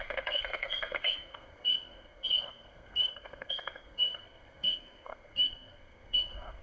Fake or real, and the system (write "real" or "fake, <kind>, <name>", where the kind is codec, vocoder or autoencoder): fake, codec, SNAC